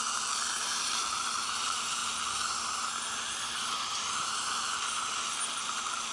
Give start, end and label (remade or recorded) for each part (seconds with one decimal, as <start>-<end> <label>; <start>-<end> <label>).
0.0-2.0 remade; 2.0-5.6 recorded; 5.6-6.1 remade